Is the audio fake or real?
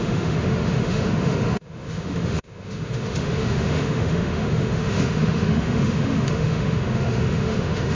fake